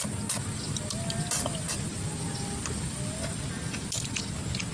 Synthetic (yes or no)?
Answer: no